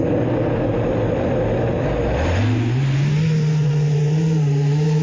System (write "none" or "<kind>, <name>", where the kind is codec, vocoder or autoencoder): none